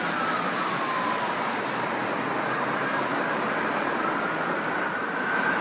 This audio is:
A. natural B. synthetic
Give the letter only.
A